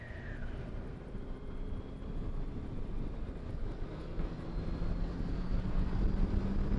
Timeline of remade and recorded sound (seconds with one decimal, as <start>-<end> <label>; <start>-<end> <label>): 0.0-3.4 recorded; 3.4-4.5 remade; 4.5-5.0 recorded; 5.0-6.0 remade; 6.0-6.8 recorded